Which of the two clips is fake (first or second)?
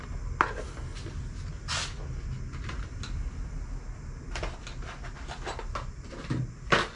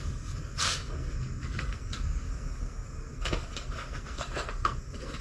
second